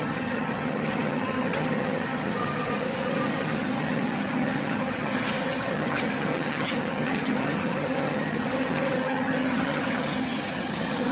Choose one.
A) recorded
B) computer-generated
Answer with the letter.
B